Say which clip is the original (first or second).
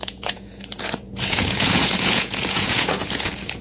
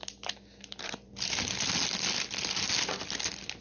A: second